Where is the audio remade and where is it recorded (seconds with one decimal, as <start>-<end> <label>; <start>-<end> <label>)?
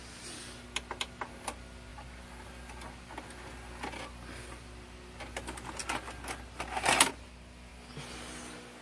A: 0.0-8.8 recorded